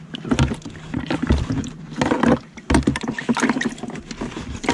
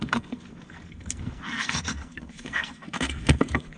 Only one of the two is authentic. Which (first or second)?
first